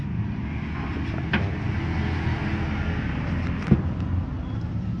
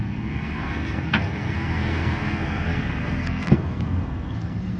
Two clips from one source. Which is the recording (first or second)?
first